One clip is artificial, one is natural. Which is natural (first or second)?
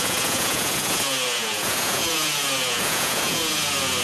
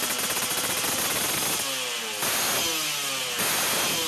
second